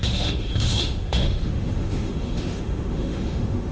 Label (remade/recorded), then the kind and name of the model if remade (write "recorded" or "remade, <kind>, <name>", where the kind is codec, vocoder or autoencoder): remade, autoencoder, DAC-VAE